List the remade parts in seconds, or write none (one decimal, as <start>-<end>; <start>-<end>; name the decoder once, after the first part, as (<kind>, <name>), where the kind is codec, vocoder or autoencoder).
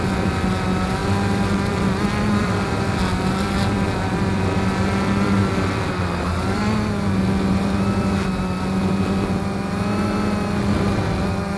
none